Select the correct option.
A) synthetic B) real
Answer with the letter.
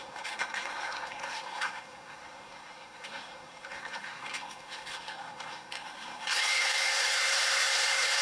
A